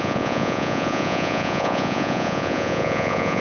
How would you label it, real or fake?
fake